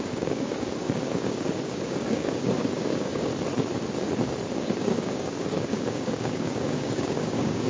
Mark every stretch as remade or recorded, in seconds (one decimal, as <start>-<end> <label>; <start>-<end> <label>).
0.0-3.3 remade; 3.3-4.5 recorded; 4.5-7.7 remade